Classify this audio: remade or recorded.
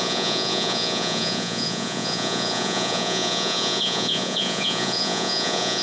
remade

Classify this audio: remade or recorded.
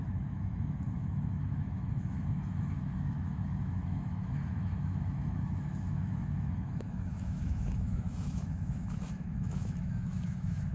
remade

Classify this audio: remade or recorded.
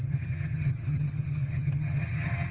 remade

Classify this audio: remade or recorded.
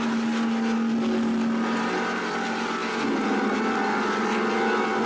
recorded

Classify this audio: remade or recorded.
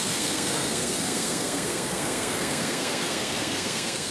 remade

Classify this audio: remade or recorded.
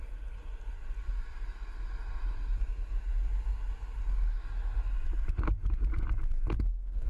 recorded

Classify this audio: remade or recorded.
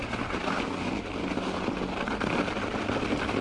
recorded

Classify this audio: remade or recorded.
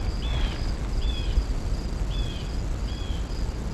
recorded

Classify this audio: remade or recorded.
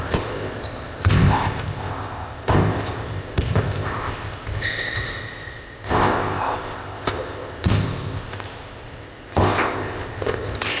remade